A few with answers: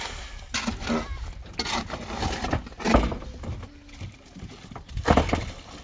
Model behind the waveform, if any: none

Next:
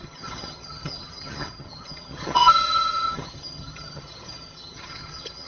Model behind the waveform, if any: vocoder, HiFi-GAN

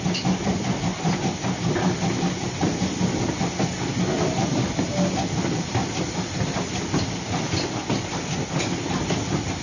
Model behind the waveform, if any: none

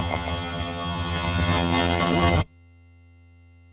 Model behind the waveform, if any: vocoder, HiFi-GAN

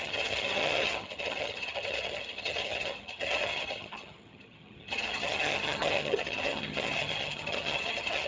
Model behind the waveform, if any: vocoder, HiFi-GAN